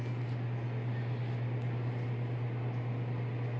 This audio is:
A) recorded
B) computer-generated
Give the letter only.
A